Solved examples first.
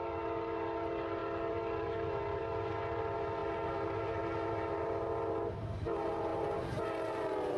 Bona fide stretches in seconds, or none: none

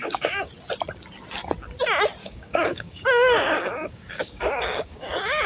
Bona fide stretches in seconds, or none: 0.5-2.2

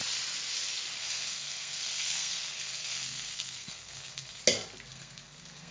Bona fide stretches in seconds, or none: 0.0-1.0; 4.4-4.9

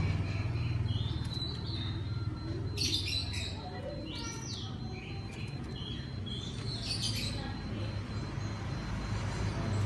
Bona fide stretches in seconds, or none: 0.0-9.9

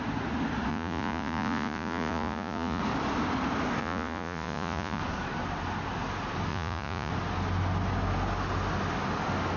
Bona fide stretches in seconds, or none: 0.0-0.7; 2.8-3.8; 5.0-6.5; 7.1-9.6

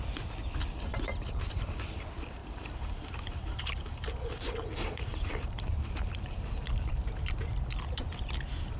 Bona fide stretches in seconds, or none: 0.0-0.9; 2.0-2.4; 6.7-8.8

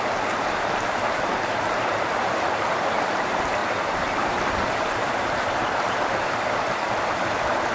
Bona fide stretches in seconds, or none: 3.6-4.7